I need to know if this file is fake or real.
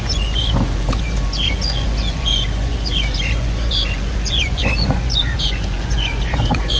fake